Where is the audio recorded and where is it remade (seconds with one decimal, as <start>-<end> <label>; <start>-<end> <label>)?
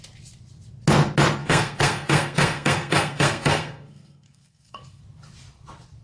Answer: 0.0-1.4 recorded; 1.4-5.0 remade; 5.0-6.0 recorded